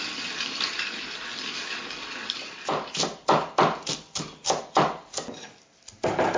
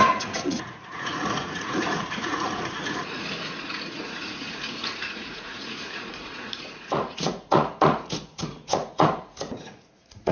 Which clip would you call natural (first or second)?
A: first